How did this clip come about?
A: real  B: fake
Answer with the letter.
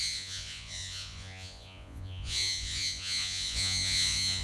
B